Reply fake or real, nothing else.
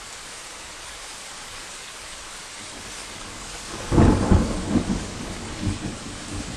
fake